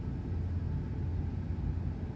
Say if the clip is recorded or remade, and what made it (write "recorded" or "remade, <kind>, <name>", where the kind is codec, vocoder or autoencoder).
recorded